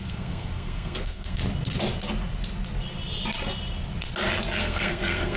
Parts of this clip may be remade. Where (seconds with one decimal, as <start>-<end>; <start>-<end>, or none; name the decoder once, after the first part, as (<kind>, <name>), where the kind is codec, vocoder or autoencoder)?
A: 0.0-1.4 (codec, SNAC); 4.6-5.4